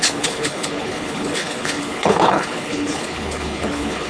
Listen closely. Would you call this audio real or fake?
fake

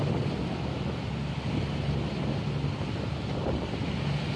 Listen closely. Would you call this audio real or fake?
real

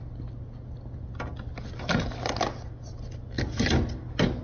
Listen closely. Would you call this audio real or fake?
real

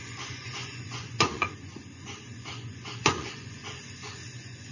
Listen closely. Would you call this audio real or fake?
fake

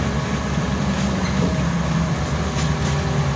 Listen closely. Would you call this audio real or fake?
real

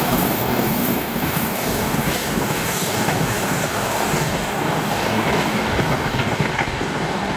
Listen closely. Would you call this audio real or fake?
fake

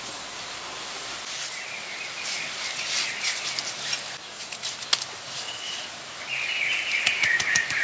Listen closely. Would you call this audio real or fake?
real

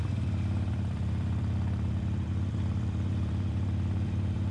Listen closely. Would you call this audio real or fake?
fake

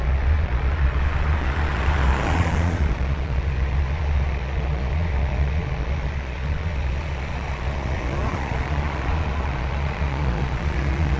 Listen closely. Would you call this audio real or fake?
fake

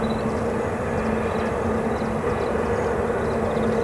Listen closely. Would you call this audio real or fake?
real